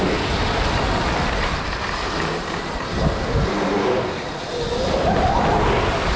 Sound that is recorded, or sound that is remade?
recorded